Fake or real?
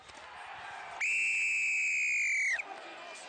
real